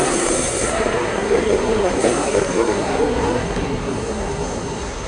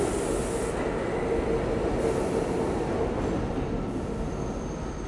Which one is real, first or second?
second